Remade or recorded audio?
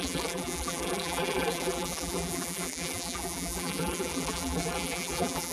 remade